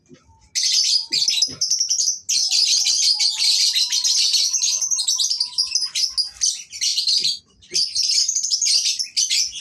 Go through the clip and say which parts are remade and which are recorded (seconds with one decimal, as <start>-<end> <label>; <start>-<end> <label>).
0.0-9.6 recorded